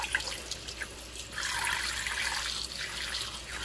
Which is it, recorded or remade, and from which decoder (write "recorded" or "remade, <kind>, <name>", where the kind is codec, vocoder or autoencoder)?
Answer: recorded